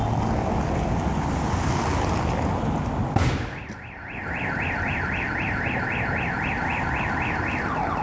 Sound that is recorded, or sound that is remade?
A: recorded